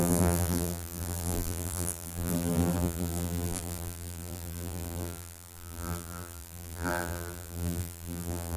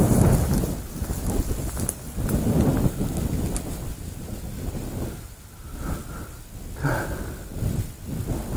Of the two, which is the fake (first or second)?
first